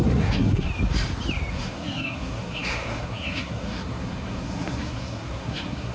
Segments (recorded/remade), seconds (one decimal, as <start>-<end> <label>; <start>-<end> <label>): 0.0-0.7 remade; 0.7-1.5 recorded; 1.5-5.9 remade